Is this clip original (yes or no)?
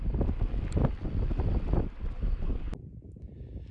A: yes